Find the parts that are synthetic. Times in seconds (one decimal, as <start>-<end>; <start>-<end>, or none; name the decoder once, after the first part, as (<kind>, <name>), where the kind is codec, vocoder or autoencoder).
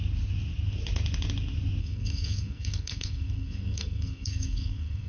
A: 1.8-5.1 (codec, SNAC)